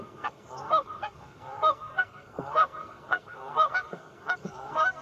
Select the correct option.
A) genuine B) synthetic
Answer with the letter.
B